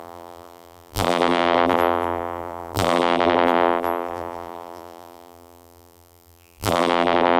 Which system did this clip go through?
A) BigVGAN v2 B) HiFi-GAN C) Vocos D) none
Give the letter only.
A